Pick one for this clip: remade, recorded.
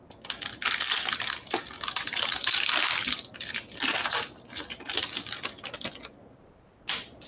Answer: recorded